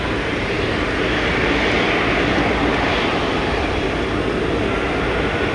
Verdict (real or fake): real